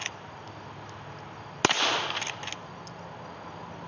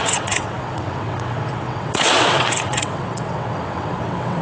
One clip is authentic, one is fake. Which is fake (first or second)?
second